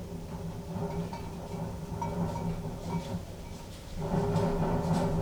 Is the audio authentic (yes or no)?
yes